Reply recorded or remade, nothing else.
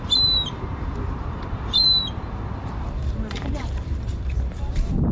remade